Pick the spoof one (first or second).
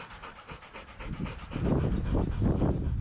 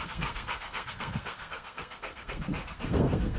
second